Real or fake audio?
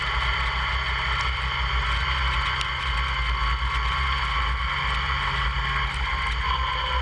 real